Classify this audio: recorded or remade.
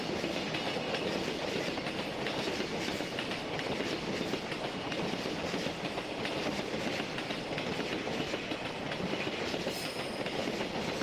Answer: recorded